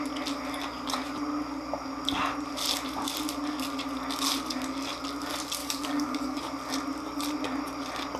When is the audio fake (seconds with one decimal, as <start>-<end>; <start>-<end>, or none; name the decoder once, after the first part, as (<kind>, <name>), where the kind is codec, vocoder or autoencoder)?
5.6-6.4 (codec, DAC)